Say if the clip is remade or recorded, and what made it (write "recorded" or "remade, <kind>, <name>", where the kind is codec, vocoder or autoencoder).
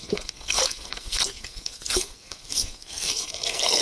remade, codec, SNAC